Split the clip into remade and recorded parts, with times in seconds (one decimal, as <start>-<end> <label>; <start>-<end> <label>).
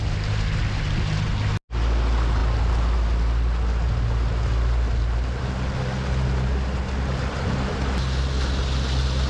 0.0-9.3 recorded